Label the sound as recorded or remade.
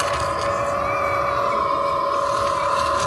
recorded